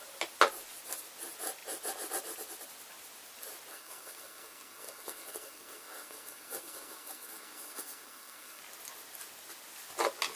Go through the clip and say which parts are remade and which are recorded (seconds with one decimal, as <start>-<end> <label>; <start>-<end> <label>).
0.0-3.7 recorded; 3.7-8.6 remade; 8.6-10.4 recorded